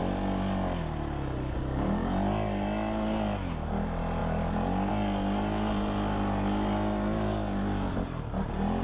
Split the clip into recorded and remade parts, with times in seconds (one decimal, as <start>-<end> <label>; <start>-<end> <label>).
0.0-8.8 recorded